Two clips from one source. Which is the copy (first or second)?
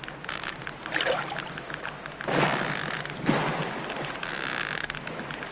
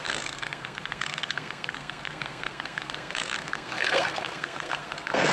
second